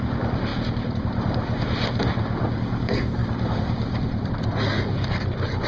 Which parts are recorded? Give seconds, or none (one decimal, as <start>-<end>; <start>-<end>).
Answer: 0.0-0.5; 1.9-3.2; 4.5-5.7